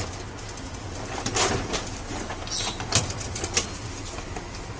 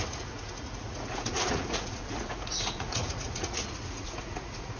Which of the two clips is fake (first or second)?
second